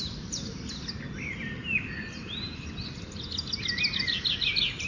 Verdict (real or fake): real